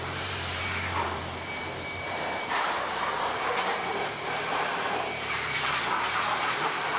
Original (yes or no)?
no